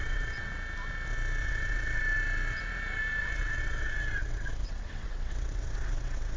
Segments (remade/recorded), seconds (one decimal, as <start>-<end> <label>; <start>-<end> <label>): 0.0-0.5 remade; 0.5-1.4 recorded; 1.4-2.0 remade; 2.0-3.2 recorded; 3.2-6.4 remade